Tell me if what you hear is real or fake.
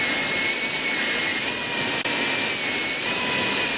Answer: real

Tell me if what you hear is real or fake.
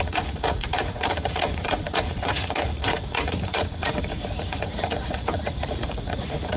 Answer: fake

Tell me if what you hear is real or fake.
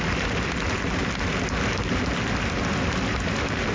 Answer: fake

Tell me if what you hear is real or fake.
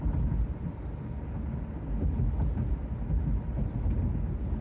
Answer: real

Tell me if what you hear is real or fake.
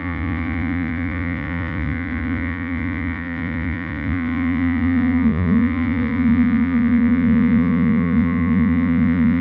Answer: fake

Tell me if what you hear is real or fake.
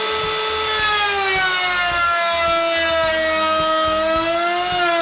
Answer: real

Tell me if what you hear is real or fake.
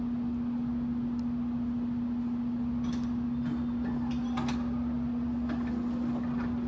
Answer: real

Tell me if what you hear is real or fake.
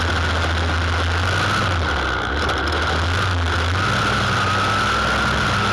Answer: real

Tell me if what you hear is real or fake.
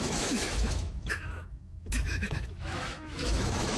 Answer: fake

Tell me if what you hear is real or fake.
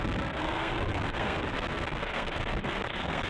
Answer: fake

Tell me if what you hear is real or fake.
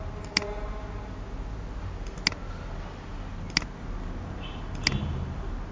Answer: real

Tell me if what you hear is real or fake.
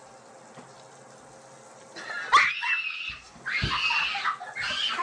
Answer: real